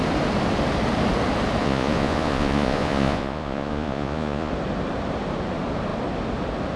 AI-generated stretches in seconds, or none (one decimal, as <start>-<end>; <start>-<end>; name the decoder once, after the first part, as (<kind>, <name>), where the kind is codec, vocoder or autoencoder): 1.6-4.5 (vocoder, Vocos)